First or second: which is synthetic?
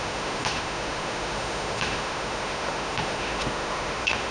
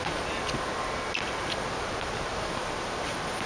first